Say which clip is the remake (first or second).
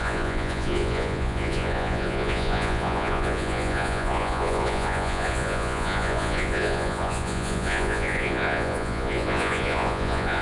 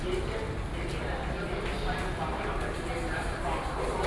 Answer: first